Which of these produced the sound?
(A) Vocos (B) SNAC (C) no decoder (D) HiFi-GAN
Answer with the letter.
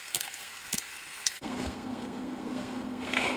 B